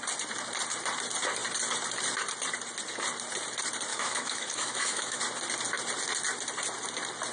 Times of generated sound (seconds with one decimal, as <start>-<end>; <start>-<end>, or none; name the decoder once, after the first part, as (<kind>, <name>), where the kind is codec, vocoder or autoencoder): 3.9-5.2 (autoencoder, DAC-VAE)

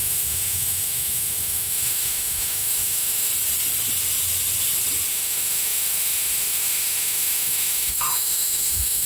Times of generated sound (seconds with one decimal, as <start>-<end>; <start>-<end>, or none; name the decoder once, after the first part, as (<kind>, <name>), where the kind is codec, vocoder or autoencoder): 0.0-3.3 (autoencoder, DAC-VAE); 5.1-9.1

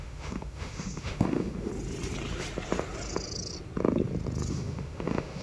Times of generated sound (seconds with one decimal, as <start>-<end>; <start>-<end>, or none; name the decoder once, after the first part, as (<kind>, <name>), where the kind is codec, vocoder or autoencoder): 0.0-1.7 (autoencoder, DAC-VAE); 4.5-5.4